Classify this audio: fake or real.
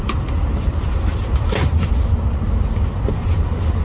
real